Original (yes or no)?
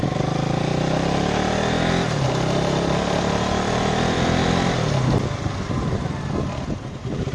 yes